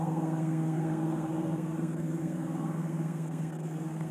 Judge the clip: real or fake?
fake